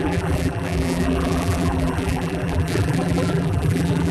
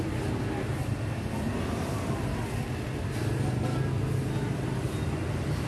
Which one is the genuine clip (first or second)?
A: second